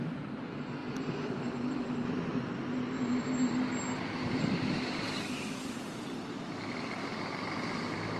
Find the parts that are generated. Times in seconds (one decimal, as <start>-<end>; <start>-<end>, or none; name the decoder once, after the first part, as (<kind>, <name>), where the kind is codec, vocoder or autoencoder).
0.0-8.2 (vocoder, BigVGAN v2)